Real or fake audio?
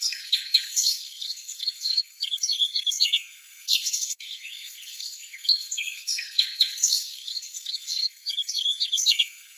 fake